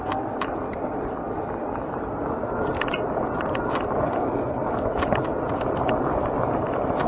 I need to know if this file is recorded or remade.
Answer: recorded